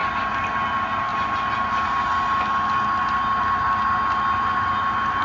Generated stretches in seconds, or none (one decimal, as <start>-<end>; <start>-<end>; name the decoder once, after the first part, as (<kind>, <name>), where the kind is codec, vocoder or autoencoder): none